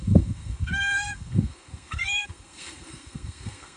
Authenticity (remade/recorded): remade